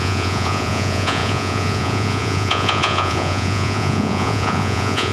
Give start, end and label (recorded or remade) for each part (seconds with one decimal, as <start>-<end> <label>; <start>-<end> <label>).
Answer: 0.0-5.1 remade